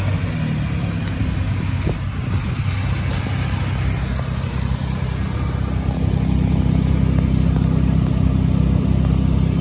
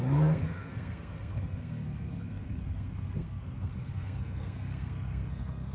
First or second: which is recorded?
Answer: first